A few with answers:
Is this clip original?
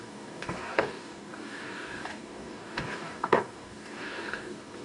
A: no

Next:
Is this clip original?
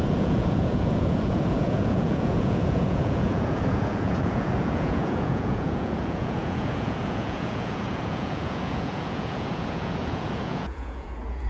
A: no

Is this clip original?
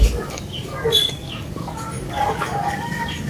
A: no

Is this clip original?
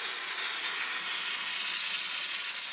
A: yes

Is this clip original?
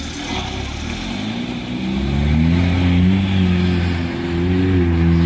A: yes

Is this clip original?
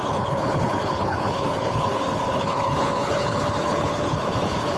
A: no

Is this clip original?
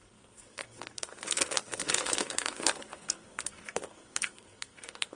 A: no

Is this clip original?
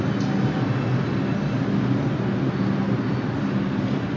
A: yes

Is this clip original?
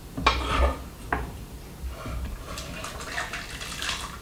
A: yes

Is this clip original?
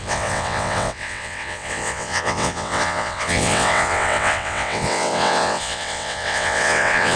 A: no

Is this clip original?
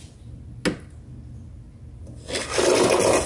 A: yes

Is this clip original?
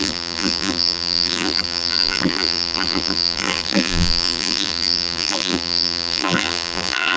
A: no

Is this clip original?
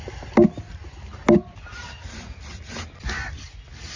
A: yes